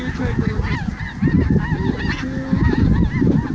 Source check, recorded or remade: recorded